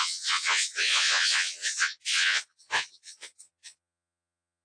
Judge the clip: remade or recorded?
remade